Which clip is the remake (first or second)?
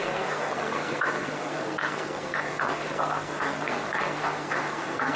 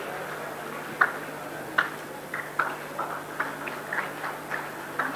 first